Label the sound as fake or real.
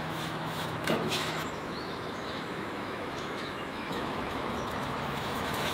fake